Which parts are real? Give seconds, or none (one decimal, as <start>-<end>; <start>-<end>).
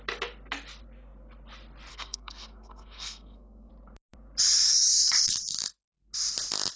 0.0-1.9; 3.7-6.8